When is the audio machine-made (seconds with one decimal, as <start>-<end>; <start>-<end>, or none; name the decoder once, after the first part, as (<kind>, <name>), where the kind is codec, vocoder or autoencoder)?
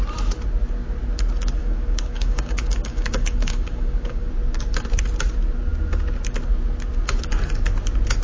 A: 1.6-4.3 (codec, DAC)